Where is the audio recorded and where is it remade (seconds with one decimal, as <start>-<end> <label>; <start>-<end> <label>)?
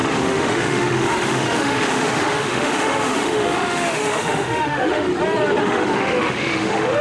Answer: 0.0-5.1 remade; 5.1-5.6 recorded; 5.6-7.0 remade